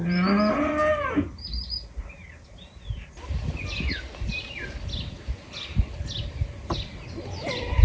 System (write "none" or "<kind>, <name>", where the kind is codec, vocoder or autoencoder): none